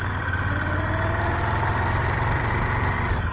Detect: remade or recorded recorded